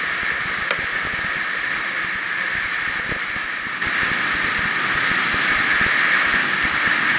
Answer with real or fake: real